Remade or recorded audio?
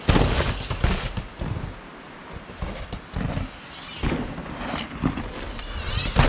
recorded